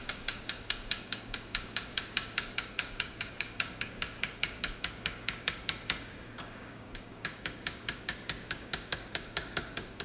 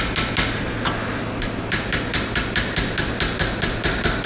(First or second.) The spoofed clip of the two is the first